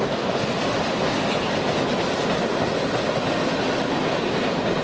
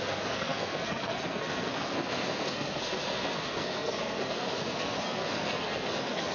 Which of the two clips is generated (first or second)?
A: second